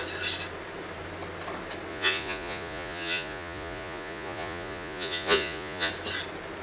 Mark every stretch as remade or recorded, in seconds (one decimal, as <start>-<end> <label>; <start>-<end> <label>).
0.0-1.9 recorded; 1.9-5.9 remade; 5.9-6.6 recorded